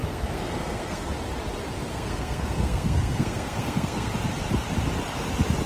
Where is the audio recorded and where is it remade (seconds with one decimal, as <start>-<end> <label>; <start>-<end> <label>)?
0.0-1.1 remade; 1.1-1.9 recorded; 1.9-4.1 remade; 4.1-5.7 recorded